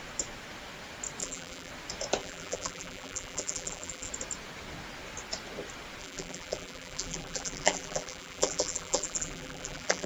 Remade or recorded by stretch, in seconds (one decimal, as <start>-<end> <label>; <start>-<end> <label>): 0.0-1.2 recorded; 1.2-1.7 remade; 1.7-2.2 recorded; 2.2-4.1 remade; 4.1-6.0 recorded; 6.0-10.1 remade